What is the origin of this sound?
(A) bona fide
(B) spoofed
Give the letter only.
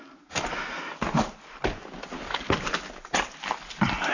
A